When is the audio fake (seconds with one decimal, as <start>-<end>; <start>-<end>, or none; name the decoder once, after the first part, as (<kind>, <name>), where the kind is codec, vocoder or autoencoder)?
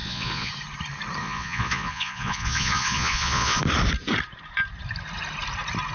0.0-0.5 (vocoder, Vocos); 1.2-3.6